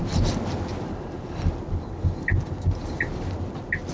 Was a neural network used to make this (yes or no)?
no